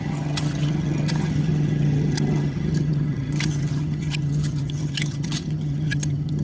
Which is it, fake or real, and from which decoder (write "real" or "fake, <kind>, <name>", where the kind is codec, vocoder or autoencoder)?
fake, vocoder, HiFi-GAN